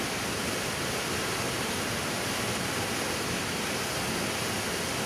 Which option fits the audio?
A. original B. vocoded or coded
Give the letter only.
A